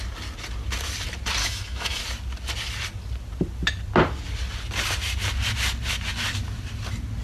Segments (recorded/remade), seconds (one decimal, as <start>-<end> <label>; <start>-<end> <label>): 0.0-1.4 recorded; 1.4-2.0 remade; 2.0-7.2 recorded

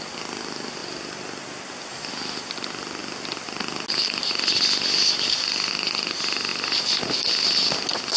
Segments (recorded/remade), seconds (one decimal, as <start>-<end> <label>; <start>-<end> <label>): 0.0-8.2 recorded

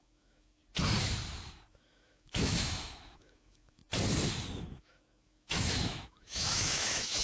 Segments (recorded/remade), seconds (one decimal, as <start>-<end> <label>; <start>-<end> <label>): 0.0-0.6 remade; 0.6-1.7 recorded; 1.7-3.8 remade; 3.8-4.8 recorded; 4.8-7.2 remade